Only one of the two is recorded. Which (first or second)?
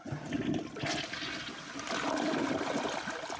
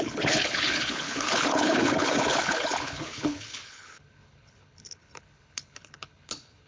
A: first